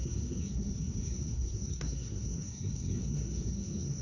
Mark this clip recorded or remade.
remade